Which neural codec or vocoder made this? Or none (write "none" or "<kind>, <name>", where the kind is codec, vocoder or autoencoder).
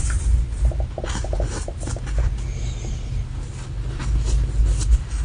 none